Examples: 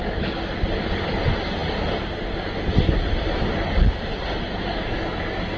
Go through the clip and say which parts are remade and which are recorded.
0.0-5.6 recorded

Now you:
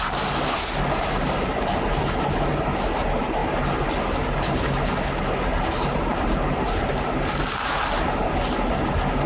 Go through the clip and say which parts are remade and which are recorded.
0.0-5.5 recorded; 5.5-6.9 remade; 6.9-9.3 recorded

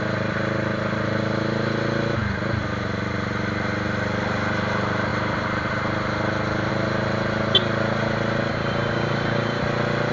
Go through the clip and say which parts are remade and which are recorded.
0.0-8.5 recorded; 8.5-9.6 remade; 9.6-10.1 recorded

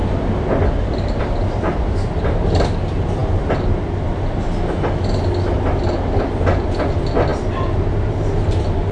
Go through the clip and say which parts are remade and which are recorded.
0.0-8.9 recorded

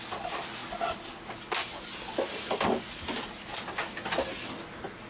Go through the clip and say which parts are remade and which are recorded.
0.0-5.1 recorded

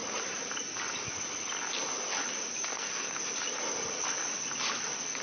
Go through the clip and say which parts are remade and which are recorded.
0.0-2.7 recorded; 2.7-3.2 remade; 3.2-5.2 recorded